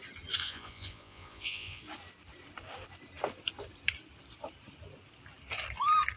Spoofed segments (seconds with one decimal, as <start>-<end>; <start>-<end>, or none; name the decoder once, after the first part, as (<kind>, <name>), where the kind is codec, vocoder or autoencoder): 0.4-1.8 (vocoder, Vocos)